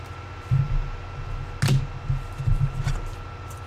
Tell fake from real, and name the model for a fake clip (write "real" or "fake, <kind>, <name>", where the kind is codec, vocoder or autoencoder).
real